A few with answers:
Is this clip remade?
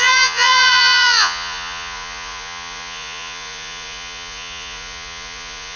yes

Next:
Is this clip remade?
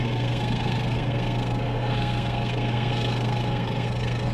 yes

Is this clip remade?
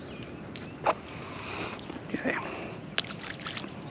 no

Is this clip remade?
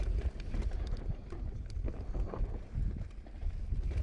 no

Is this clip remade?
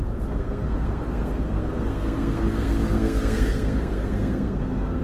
yes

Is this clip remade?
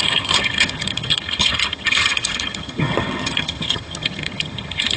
yes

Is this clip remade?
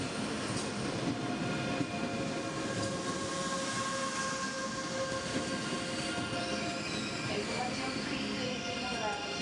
no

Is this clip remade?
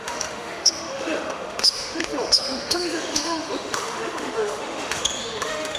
yes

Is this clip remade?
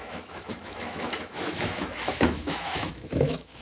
yes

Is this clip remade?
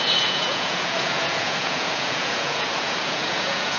yes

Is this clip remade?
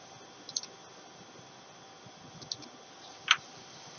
no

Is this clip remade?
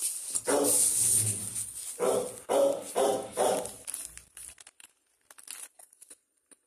no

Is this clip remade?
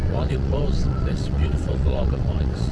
yes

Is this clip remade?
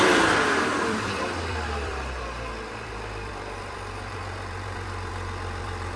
yes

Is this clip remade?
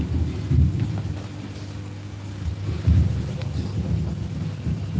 no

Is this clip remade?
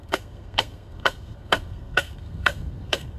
yes